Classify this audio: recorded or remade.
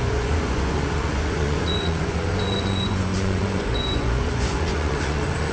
remade